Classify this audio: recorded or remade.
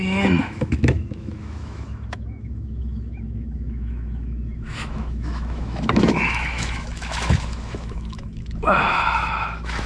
remade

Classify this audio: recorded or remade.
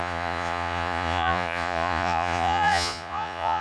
remade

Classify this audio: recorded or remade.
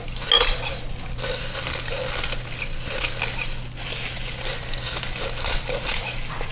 recorded